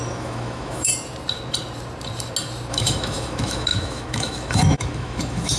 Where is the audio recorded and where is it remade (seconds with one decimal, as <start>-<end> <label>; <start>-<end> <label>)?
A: 0.0-0.9 remade; 0.9-2.7 recorded; 2.7-5.6 remade